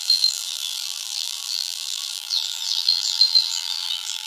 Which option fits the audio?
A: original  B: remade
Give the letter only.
B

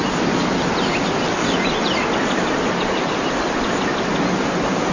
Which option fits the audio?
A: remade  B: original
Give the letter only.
B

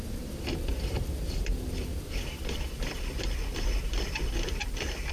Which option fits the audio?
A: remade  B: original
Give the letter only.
A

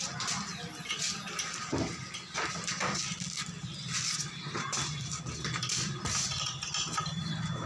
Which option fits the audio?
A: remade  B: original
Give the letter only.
B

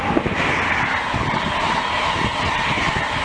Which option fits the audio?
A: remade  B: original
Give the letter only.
A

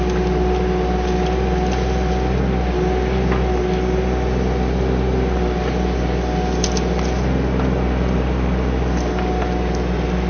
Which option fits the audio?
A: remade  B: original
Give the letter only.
B